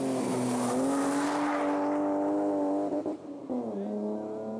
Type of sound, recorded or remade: recorded